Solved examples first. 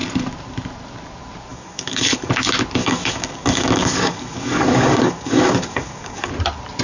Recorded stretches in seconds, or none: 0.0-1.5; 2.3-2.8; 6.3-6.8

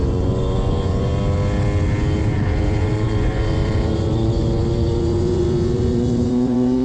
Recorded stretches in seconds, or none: 1.1-2.2

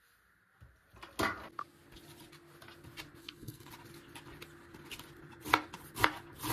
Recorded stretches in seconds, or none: 0.0-3.2; 3.7-6.5

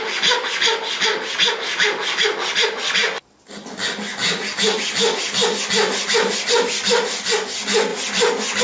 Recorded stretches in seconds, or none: 0.0-8.6

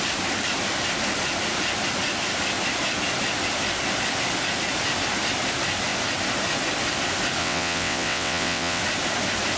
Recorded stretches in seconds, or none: 0.0-7.4; 8.8-9.6

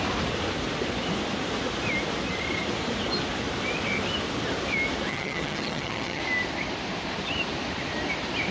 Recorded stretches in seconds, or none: 0.0-5.1; 6.2-8.5